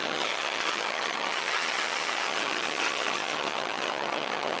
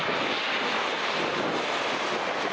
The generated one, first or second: first